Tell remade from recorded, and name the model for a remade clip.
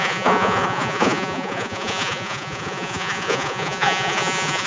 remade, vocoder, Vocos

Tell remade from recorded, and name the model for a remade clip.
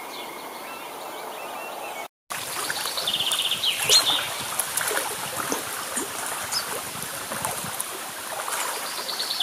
recorded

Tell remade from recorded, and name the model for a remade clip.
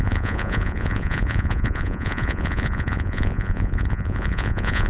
remade, vocoder, Vocos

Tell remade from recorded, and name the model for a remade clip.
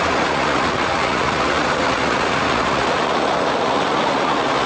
remade, vocoder, Vocos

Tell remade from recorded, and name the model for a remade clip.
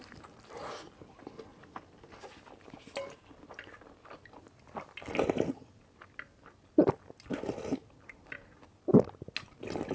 recorded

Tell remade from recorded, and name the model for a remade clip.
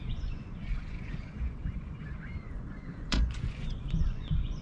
remade, vocoder, Vocos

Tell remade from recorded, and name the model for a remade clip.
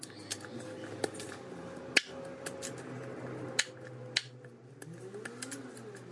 recorded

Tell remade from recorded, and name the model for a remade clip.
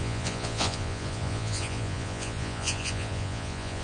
remade, vocoder, Vocos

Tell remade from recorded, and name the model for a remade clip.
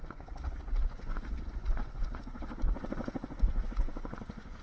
remade, vocoder, Vocos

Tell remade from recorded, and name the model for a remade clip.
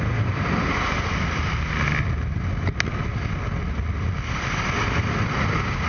recorded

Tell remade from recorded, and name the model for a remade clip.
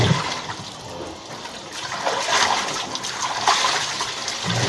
recorded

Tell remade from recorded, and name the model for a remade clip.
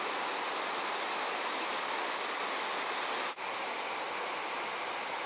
recorded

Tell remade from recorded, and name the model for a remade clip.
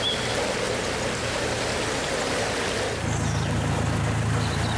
recorded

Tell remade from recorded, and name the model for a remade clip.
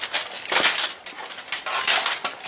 recorded